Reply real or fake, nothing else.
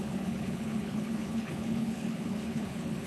fake